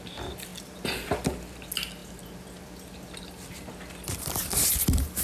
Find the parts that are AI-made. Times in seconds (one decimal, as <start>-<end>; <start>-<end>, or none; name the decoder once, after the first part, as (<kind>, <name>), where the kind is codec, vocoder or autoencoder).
none